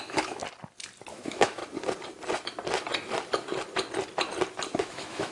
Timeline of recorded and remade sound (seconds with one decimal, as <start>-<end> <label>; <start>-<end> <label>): 0.0-0.4 remade; 0.4-1.1 recorded; 1.1-1.6 remade; 1.6-4.8 recorded; 4.8-5.3 remade